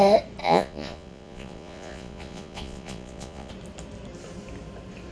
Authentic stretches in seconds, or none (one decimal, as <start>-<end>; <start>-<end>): 0.0-0.4; 3.5-5.1